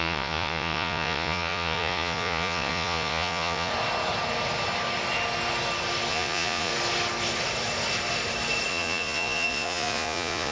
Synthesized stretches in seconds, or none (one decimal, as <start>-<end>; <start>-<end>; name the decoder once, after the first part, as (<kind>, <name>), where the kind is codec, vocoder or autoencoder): 0.0-3.7 (vocoder, Vocos); 6.1-6.7; 8.7-10.5